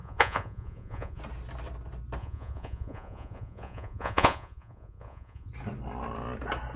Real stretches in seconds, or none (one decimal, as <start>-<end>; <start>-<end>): 1.2-2.2; 5.5-6.8